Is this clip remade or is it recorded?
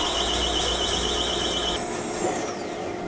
recorded